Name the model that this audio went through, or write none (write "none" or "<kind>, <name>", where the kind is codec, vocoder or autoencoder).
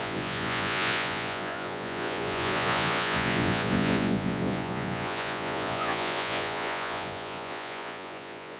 vocoder, Vocos